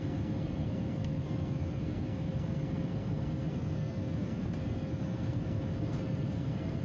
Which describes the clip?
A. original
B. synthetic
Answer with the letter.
B